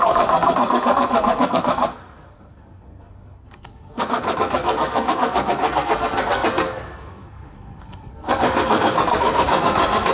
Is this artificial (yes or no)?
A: yes